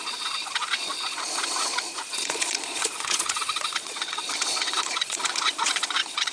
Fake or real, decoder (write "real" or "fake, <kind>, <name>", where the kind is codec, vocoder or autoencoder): fake, vocoder, Vocos